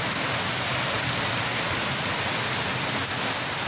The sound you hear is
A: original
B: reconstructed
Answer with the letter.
A